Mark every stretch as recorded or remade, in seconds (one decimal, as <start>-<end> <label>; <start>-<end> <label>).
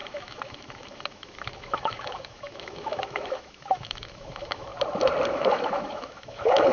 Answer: 0.0-4.7 remade; 4.7-5.3 recorded; 5.3-6.7 remade